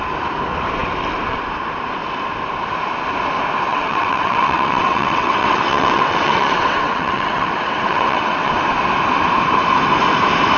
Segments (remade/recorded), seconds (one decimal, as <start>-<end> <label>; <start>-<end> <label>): 0.0-3.7 recorded; 3.7-8.5 remade; 8.5-10.6 recorded